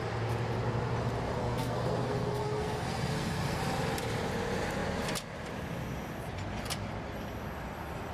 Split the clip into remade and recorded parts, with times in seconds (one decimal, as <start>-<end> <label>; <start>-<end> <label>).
0.0-1.4 recorded; 1.4-3.6 remade; 3.6-8.1 recorded